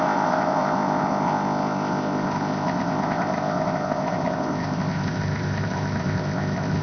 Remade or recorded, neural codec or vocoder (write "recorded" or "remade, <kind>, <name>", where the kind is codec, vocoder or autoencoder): remade, codec, ZipCodec